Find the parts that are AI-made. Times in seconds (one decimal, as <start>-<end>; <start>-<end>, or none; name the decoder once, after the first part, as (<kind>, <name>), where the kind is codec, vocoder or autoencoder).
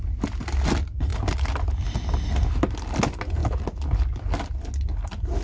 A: none